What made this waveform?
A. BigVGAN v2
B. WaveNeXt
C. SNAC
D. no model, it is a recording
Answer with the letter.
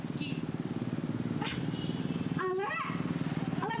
D